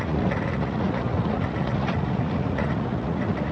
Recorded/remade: remade